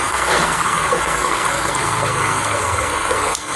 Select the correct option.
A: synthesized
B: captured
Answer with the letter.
A